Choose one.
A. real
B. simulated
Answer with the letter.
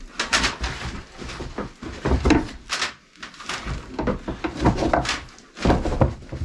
A